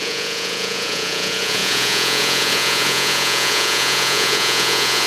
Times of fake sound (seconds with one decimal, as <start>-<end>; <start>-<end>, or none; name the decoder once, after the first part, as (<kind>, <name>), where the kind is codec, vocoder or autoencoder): 0.0-5.1 (vocoder, Vocos)